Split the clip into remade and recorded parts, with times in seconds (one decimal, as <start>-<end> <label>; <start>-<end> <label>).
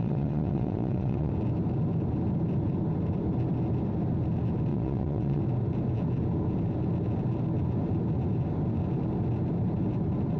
0.0-1.3 remade; 1.3-4.7 recorded; 4.7-5.4 remade; 5.4-10.4 recorded